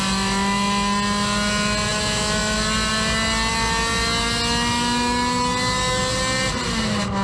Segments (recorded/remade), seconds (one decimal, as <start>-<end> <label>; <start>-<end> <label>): 0.0-7.2 recorded